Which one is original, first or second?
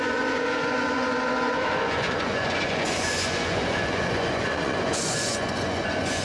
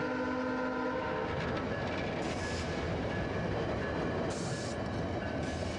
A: second